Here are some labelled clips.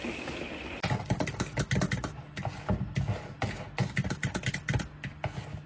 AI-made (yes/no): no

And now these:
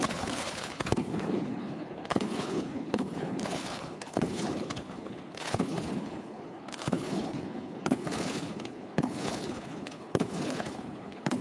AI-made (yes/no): yes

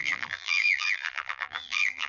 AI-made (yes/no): yes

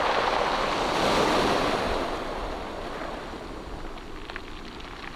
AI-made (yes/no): no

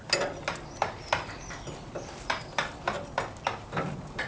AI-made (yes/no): no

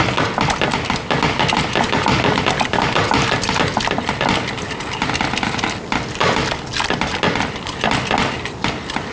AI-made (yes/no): no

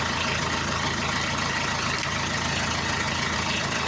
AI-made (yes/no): no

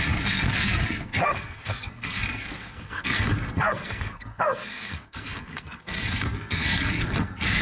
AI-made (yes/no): yes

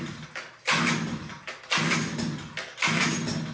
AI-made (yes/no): no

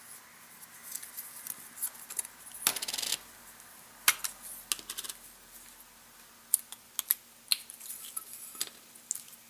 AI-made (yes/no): no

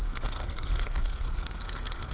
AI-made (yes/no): yes